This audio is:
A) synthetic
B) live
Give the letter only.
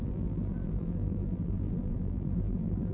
A